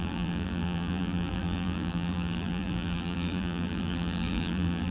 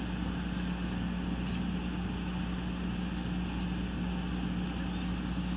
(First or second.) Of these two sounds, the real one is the second